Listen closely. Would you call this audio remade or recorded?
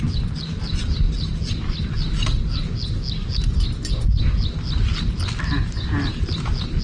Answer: recorded